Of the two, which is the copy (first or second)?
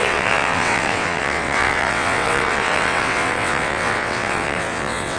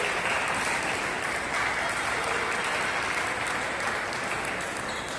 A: first